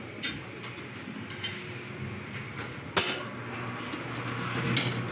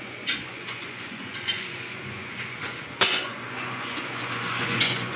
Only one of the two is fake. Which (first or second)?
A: second